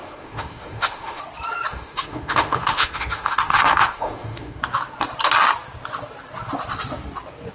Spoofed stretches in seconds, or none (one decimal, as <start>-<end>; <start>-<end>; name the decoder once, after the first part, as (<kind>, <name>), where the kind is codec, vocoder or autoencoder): 0.0-1.2 (autoencoder, DAC-VAE); 1.7-4.6